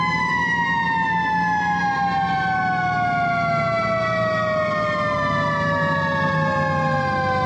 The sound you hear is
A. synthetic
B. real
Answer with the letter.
B